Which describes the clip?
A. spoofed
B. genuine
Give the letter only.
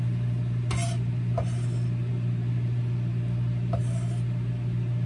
B